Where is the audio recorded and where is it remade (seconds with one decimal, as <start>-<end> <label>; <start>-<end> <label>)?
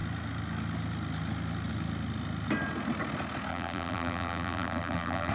0.0-3.5 recorded; 3.5-5.3 remade